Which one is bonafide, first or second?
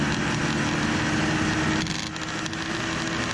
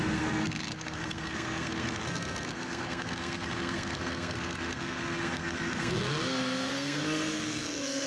first